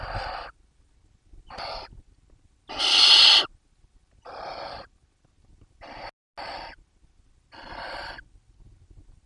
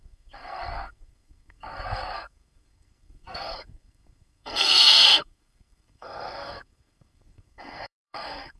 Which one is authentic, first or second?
first